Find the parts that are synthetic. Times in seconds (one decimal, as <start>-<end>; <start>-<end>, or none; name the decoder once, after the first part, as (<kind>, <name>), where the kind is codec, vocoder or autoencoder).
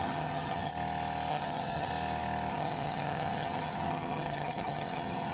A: 0.0-0.7 (vocoder, HiFi-GAN); 1.3-1.9; 2.5-5.3